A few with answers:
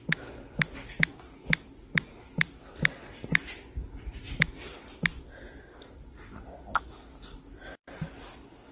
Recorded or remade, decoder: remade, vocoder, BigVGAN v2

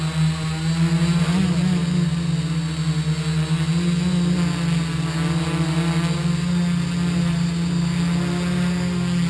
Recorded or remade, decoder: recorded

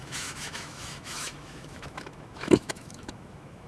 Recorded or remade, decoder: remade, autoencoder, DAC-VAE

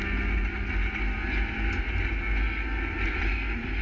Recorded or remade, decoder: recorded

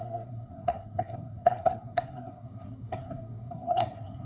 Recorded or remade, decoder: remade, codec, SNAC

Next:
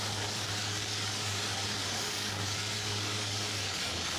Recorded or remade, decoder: remade, codec, DAC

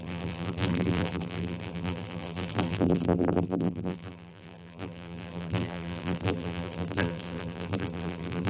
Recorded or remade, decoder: remade, vocoder, BigVGAN v2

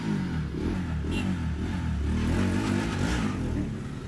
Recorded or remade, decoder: recorded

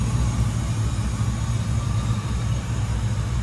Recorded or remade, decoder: recorded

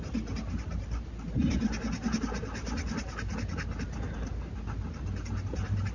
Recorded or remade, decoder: recorded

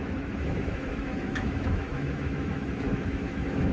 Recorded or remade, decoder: remade, autoencoder, DAC-VAE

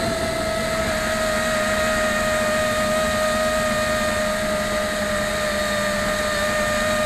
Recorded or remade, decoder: recorded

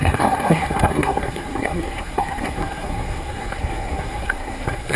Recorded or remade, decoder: remade, codec, SNAC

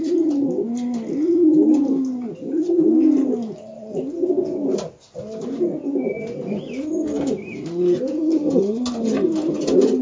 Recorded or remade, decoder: recorded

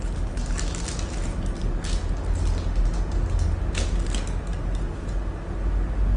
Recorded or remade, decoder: recorded